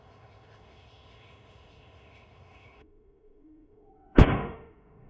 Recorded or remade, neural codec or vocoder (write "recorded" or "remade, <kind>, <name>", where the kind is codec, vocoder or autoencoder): remade, autoencoder, DAC-VAE